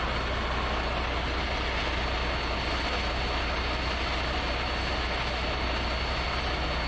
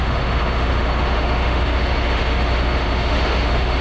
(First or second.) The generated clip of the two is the second